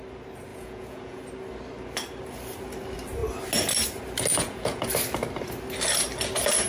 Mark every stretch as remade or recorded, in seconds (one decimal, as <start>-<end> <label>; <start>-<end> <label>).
0.0-0.5 recorded; 0.5-1.2 remade; 1.2-4.3 recorded; 4.3-4.8 remade; 4.8-6.7 recorded